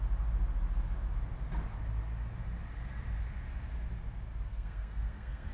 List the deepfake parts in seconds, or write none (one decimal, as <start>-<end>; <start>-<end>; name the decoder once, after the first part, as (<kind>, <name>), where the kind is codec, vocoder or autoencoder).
4.5-5.5 (codec, SNAC)